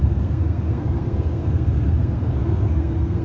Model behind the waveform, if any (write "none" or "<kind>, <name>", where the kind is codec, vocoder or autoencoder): codec, SNAC